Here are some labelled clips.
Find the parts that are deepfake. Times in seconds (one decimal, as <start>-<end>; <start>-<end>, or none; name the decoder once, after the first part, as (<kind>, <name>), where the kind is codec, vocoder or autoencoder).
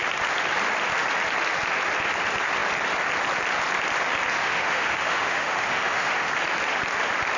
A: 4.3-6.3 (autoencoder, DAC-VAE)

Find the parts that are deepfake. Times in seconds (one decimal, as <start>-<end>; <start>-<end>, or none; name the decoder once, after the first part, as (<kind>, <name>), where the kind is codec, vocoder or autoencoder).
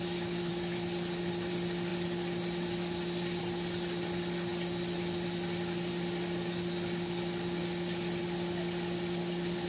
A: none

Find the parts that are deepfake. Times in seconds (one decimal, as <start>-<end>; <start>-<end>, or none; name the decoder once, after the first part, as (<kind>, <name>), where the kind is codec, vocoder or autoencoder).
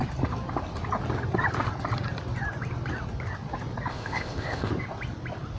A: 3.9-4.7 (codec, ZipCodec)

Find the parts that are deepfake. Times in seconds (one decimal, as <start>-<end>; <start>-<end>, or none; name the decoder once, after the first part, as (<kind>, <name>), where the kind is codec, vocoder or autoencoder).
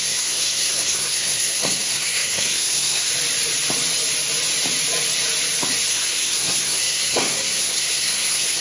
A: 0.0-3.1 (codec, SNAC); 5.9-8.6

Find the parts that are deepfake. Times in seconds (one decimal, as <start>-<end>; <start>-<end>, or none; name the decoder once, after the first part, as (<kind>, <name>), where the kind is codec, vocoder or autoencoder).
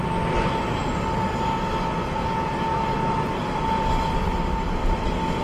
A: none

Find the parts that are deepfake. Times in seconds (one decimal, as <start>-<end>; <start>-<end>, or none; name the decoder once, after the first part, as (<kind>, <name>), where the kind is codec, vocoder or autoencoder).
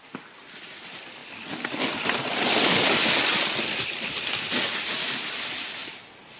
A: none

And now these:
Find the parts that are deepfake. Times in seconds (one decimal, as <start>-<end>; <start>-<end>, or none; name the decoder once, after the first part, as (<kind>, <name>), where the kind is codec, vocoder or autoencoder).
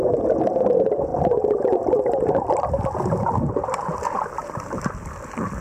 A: none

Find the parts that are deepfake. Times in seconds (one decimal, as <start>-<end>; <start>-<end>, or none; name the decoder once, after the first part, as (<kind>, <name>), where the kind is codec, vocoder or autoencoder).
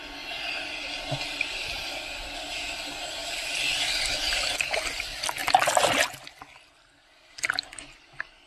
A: 3.2-4.5 (vocoder, BigVGAN v2)